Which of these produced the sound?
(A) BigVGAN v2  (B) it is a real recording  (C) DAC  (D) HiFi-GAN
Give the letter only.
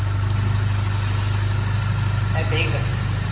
B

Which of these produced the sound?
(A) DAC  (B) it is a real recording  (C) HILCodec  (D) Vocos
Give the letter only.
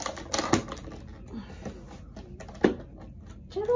B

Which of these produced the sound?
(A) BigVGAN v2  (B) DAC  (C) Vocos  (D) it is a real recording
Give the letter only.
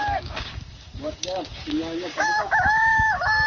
B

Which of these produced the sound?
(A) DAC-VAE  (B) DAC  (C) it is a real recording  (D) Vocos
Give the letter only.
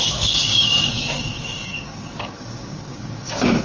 B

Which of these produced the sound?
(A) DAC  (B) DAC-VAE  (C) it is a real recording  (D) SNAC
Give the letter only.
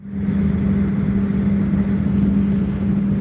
C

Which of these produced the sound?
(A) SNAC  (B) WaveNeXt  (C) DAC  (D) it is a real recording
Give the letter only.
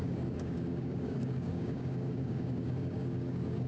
C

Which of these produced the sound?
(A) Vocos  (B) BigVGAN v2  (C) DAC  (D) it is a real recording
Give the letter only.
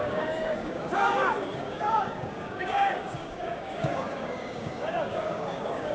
C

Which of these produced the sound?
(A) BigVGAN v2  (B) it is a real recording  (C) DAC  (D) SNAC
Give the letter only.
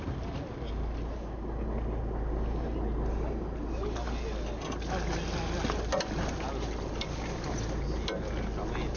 B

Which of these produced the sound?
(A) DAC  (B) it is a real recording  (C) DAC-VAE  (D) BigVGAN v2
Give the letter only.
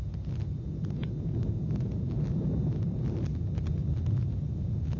B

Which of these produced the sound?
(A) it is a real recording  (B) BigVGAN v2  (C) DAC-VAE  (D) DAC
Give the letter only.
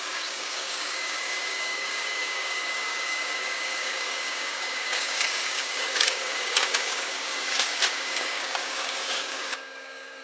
D